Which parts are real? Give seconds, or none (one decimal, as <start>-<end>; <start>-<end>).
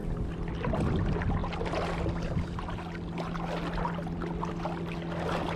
0.0-5.6